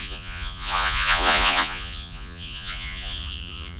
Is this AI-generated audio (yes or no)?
yes